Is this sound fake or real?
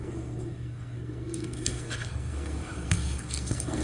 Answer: fake